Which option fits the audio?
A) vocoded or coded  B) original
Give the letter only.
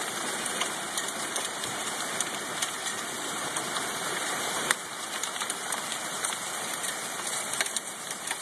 A